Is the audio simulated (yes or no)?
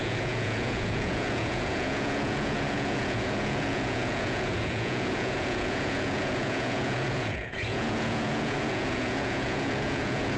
yes